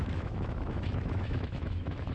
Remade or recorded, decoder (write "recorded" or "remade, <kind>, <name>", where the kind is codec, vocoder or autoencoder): remade, autoencoder, DAC-VAE